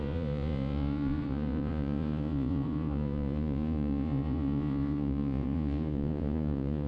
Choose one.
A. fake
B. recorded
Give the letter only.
A